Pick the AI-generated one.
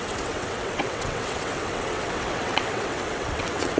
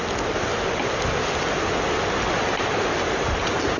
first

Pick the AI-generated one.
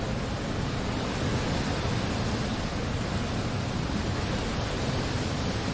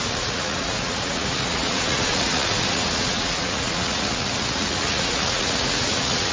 second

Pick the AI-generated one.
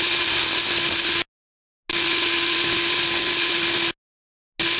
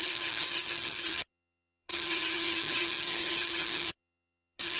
second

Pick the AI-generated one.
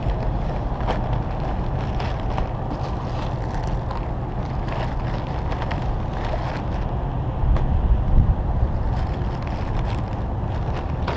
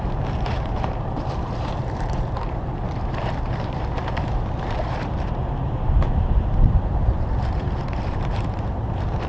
second